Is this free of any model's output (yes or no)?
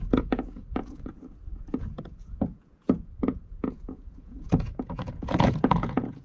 no